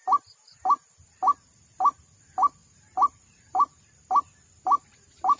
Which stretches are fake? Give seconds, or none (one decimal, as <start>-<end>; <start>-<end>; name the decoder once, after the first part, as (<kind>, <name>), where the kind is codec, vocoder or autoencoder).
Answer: 2.6-4.1 (vocoder, BigVGAN v2)